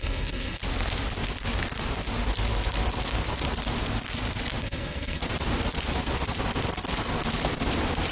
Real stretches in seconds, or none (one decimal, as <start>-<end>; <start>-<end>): 0.6-4.6; 5.2-8.1